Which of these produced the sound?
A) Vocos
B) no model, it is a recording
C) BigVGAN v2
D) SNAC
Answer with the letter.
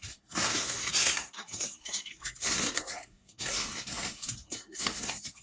D